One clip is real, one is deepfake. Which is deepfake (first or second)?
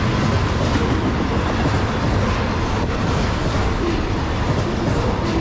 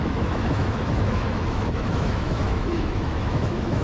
second